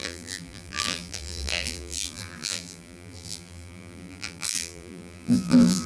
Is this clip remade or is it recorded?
remade